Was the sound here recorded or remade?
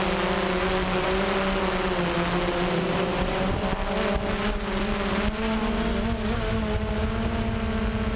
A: recorded